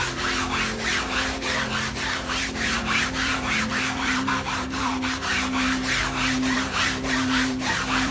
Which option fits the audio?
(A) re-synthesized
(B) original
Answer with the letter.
A